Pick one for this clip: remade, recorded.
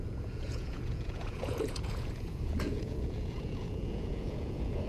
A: remade